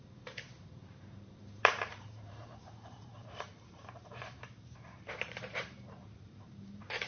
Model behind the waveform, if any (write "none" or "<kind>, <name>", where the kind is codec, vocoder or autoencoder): vocoder, BigVGAN v2